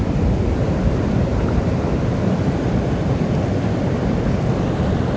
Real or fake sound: real